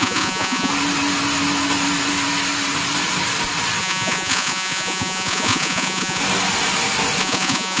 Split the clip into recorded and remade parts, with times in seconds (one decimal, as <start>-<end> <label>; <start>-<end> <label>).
0.0-0.7 remade; 0.7-3.8 recorded; 3.8-6.2 remade; 6.2-7.2 recorded; 7.2-7.8 remade